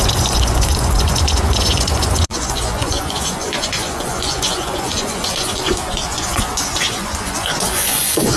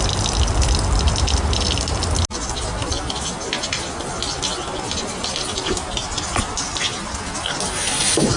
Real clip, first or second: second